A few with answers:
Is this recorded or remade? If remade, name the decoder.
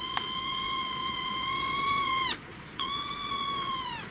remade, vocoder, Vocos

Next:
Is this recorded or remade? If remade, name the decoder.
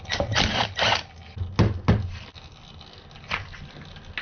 recorded